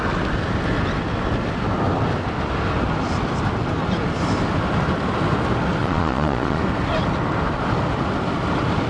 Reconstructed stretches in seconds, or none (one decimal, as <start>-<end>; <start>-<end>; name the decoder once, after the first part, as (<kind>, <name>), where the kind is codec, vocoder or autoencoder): 5.8-6.6 (vocoder, Vocos)